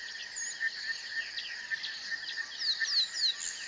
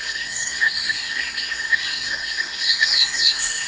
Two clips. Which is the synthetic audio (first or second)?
second